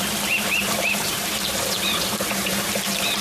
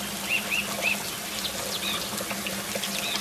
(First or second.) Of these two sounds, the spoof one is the first